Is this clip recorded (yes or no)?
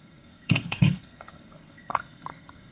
no